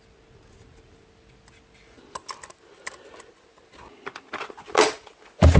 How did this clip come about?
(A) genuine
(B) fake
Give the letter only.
A